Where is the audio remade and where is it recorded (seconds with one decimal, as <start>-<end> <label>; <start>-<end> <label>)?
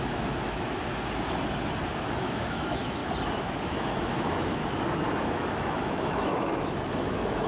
0.0-0.9 remade; 0.9-2.2 recorded; 2.2-3.0 remade; 3.0-3.6 recorded; 3.6-4.6 remade; 4.6-5.2 recorded; 5.2-7.5 remade